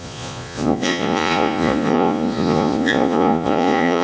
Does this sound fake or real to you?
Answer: fake